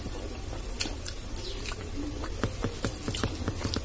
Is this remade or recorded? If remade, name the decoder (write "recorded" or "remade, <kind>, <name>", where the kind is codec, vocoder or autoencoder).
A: recorded